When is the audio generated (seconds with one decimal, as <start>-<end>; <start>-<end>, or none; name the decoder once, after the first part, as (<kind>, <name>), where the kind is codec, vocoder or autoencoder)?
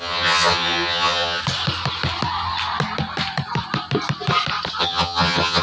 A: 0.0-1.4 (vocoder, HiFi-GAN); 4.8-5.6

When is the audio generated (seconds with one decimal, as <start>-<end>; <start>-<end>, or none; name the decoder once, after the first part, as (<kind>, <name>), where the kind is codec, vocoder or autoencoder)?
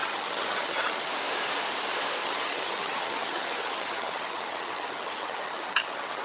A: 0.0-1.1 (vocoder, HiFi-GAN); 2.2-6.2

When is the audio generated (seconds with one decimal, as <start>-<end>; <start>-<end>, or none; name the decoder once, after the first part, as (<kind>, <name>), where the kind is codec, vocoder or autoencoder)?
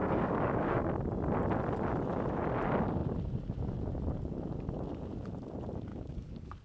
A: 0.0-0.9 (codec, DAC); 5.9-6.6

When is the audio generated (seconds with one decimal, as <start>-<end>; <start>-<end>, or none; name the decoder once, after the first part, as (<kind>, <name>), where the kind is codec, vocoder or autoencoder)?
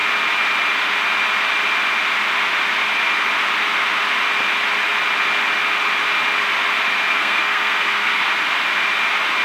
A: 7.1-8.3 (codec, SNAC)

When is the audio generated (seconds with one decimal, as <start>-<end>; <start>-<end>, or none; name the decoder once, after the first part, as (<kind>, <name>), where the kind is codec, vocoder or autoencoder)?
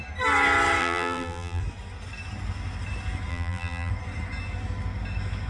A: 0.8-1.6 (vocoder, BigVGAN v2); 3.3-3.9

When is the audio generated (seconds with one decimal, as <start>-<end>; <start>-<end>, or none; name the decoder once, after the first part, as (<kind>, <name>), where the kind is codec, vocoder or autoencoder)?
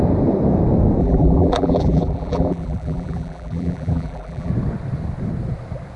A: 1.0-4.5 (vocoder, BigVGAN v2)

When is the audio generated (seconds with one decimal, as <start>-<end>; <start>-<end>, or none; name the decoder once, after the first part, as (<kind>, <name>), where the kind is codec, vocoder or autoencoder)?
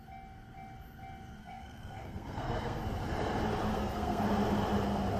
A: 1.4-2.8 (codec, SNAC); 3.7-4.2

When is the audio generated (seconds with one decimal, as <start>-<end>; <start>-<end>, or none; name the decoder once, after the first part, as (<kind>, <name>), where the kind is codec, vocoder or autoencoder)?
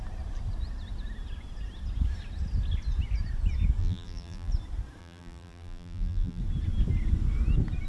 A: 3.8-4.5 (vocoder, BigVGAN v2); 5.0-6.4